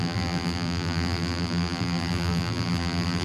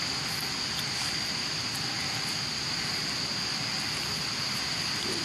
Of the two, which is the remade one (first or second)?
first